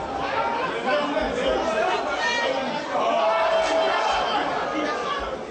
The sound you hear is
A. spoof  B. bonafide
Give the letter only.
B